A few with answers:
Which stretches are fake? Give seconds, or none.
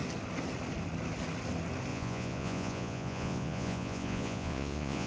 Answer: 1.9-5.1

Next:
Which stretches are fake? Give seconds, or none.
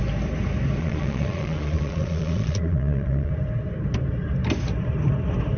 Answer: 0.8-3.3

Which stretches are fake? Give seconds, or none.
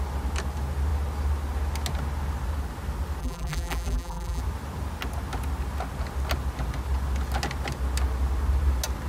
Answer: 3.2-4.4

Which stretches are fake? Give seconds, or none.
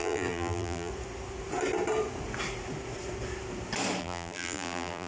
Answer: 0.0-0.9; 4.0-5.1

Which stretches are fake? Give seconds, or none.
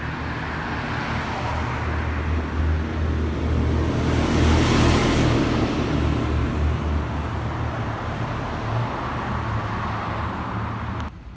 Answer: none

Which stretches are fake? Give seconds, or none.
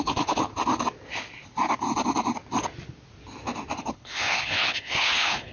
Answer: 0.0-0.5; 3.8-5.5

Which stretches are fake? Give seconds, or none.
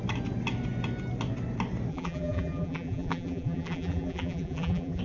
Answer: 1.9-5.0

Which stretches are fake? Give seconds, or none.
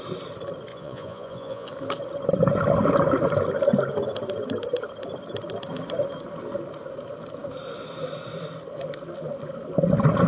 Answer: 0.7-1.7